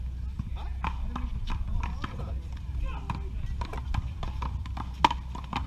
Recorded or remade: recorded